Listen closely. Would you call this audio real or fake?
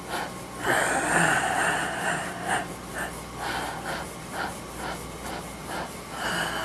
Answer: real